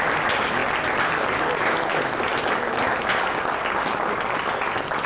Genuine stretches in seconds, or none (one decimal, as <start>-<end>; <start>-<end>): 0.0-5.1